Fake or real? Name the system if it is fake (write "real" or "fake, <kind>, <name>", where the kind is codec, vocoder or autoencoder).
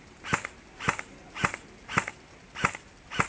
real